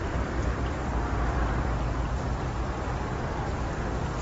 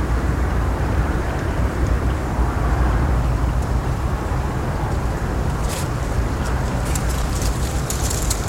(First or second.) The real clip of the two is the first